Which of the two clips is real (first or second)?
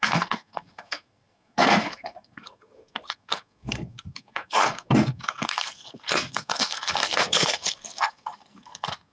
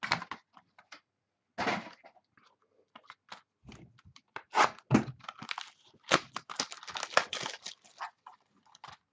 second